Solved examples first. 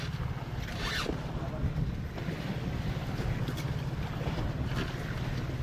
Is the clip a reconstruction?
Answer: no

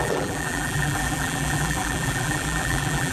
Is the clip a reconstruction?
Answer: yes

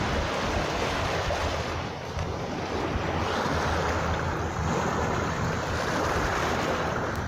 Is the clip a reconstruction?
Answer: no